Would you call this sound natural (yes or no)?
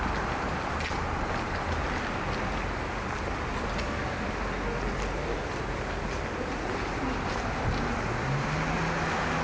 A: yes